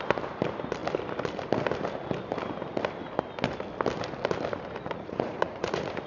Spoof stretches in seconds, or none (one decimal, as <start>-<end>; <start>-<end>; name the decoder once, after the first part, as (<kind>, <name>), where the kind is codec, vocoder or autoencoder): 4.8-6.1 (vocoder, Vocos)